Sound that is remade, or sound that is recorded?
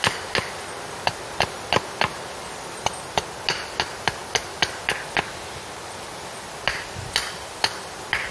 recorded